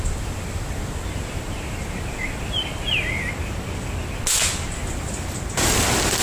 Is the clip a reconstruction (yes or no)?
no